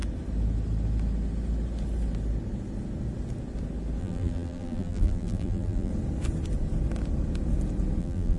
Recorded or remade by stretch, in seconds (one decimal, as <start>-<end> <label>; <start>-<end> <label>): 0.0-4.0 recorded; 4.0-5.9 remade; 5.9-8.0 recorded; 8.0-8.4 remade